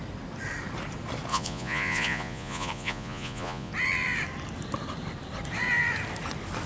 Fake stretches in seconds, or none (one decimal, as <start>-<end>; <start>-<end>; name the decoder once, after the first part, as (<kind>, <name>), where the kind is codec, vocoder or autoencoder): 1.3-3.7 (vocoder, Vocos)